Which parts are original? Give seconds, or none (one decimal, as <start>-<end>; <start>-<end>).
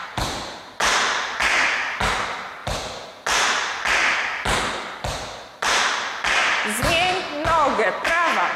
2.0-6.4; 7.2-8.6